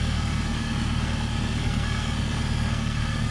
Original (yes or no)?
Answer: no